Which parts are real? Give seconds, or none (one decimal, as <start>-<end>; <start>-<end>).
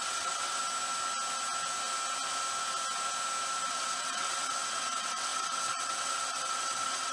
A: 0.6-3.7